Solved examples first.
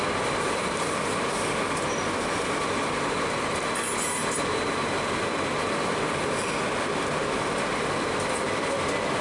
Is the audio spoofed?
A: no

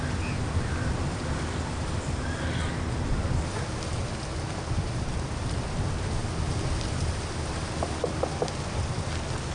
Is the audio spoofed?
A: no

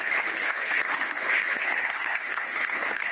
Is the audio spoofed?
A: yes